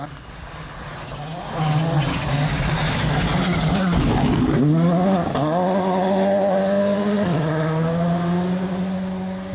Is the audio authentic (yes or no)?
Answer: yes